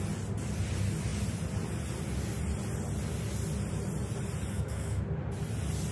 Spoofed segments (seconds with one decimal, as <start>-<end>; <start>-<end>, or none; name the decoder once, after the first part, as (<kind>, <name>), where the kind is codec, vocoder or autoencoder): 4.5-5.0 (codec, SNAC)